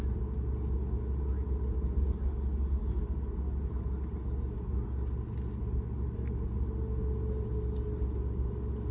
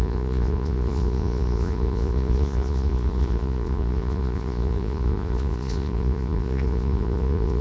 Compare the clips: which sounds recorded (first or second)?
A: first